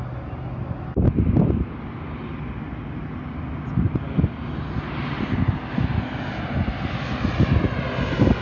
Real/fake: real